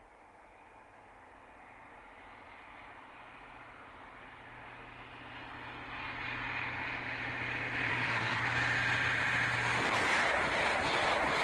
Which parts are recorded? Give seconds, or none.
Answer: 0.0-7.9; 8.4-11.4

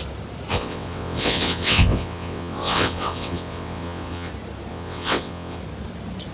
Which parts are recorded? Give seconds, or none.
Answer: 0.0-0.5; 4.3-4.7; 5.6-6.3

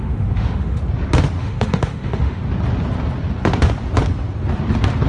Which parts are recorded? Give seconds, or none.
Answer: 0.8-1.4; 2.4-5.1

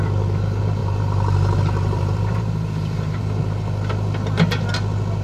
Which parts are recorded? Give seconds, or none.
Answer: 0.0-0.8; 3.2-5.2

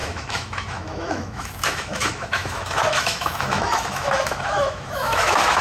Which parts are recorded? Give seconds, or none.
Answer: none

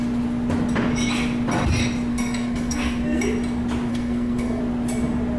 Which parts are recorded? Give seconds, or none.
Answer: 0.0-2.1; 3.2-3.9; 4.6-5.4

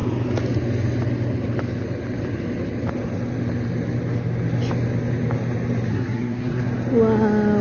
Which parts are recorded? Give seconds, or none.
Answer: 0.0-5.9; 6.7-7.6